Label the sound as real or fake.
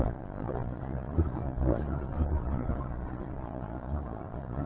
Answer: fake